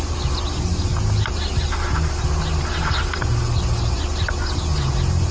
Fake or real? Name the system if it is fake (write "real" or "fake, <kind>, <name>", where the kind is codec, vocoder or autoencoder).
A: real